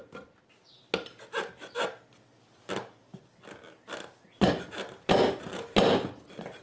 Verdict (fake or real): real